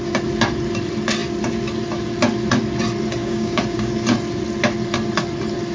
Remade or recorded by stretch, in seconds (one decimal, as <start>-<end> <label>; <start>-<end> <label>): 0.0-3.2 recorded; 3.2-3.9 remade; 3.9-5.7 recorded

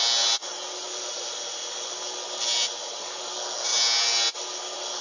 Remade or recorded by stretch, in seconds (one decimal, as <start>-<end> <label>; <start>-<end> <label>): 0.0-5.0 recorded

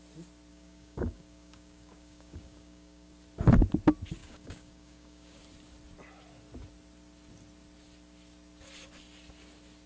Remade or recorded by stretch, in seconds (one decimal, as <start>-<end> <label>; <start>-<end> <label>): 0.0-0.5 recorded; 0.5-3.1 remade; 3.1-4.2 recorded; 4.2-5.4 remade; 5.4-9.9 recorded

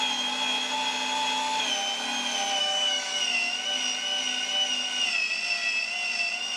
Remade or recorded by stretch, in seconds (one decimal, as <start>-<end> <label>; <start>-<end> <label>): 0.0-2.6 recorded; 2.6-3.2 remade; 3.2-6.6 recorded

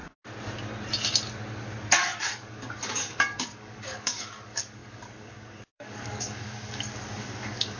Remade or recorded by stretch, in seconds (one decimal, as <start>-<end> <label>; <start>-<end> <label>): 0.0-1.9 recorded; 1.9-7.8 remade

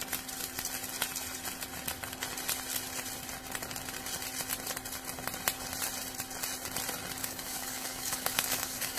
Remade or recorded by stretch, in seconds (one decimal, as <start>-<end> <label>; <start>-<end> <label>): 0.0-7.2 recorded; 7.2-9.0 remade

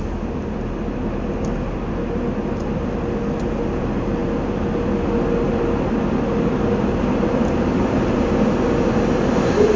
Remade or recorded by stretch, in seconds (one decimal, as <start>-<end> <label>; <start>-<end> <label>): 0.0-9.8 recorded

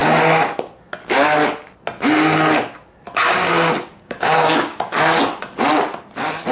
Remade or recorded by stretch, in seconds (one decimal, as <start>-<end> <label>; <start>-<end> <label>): 0.0-3.9 recorded; 3.9-5.0 remade; 5.0-6.5 recorded